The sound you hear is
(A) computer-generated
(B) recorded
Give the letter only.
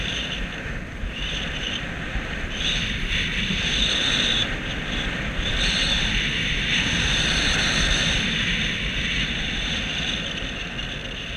B